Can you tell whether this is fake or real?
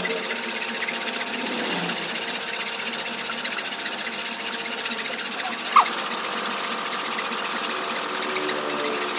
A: real